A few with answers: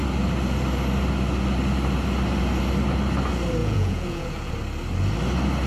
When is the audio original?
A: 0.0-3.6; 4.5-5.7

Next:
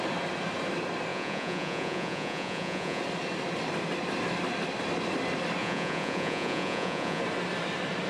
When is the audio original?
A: 0.0-1.1; 3.0-5.6; 7.2-8.1

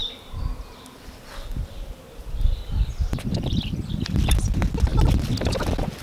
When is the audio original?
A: 0.0-6.0

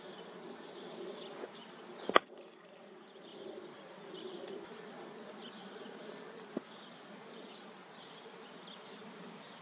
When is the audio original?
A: 0.0-9.6

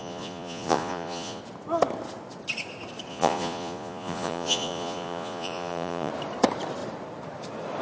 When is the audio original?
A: 1.4-3.1; 6.1-7.8